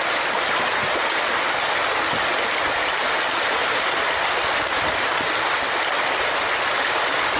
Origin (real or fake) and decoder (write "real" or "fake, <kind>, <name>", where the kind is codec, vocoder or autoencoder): real